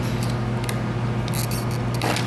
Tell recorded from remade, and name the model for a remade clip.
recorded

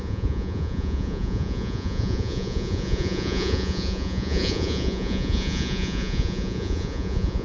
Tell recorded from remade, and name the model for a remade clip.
remade, vocoder, Vocos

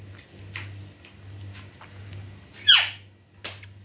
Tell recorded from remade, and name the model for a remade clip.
recorded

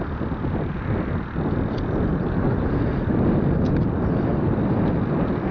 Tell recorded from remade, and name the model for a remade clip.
recorded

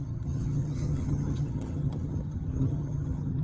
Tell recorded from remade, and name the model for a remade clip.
remade, vocoder, HiFi-GAN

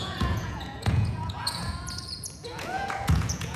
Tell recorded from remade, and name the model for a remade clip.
remade, vocoder, Vocos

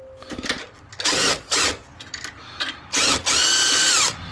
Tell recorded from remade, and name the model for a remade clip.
recorded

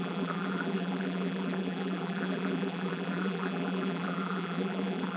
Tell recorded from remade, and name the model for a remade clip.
remade, vocoder, BigVGAN v2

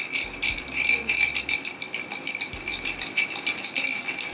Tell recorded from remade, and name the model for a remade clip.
recorded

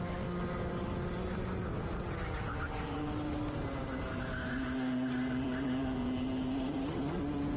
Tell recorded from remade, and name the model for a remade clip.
recorded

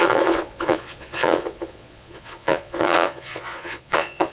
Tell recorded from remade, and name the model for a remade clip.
remade, vocoder, Vocos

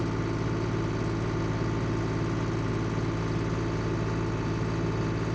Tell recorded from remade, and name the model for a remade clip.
recorded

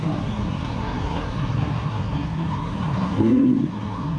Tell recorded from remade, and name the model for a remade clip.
remade, codec, SNAC